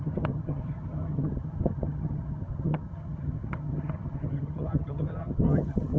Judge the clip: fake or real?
fake